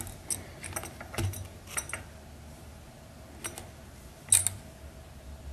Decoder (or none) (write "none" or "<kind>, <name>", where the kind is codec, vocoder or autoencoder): none